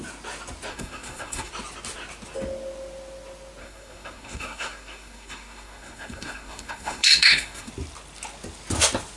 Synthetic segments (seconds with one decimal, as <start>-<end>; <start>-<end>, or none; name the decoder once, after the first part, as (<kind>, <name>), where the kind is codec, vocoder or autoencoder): 0.7-1.5 (codec, SNAC); 3.6-7.7